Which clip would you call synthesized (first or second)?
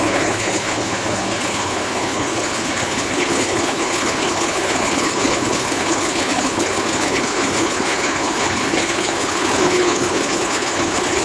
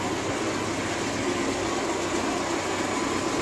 first